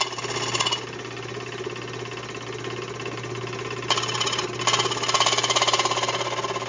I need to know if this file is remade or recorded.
recorded